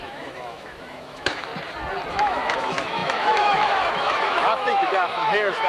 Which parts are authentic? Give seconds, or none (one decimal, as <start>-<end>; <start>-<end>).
1.5-2.1